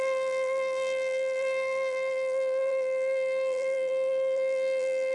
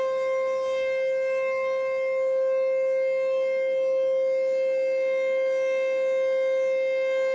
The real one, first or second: second